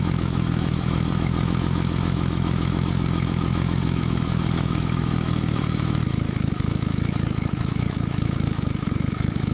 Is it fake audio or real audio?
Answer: fake